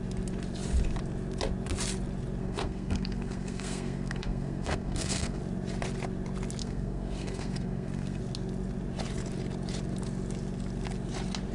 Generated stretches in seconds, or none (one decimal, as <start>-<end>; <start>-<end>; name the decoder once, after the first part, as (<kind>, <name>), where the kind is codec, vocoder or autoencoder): 2.4-5.4 (codec, SNAC); 6.6-8.2

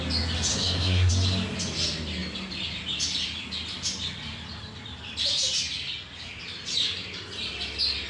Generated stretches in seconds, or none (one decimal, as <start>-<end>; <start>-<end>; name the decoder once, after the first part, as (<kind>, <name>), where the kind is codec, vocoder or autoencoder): 0.5-1.1 (codec, SNAC)

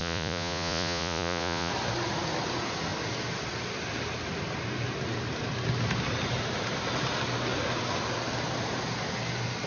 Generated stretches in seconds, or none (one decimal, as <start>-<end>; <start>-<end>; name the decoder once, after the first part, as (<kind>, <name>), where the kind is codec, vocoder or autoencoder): 0.0-1.7 (vocoder, Vocos)

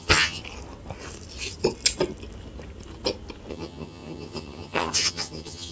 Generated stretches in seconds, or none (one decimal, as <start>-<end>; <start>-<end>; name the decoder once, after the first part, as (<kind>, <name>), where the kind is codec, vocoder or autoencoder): 0.0-0.4 (vocoder, HiFi-GAN); 3.5-5.7

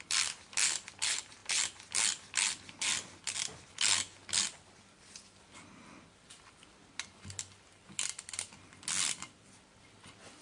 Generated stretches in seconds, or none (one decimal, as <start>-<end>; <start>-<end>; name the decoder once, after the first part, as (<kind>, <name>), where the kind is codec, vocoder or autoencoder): none